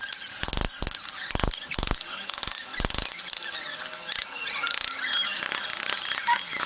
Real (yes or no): yes